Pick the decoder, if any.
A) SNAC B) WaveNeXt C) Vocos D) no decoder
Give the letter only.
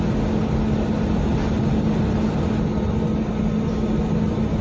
D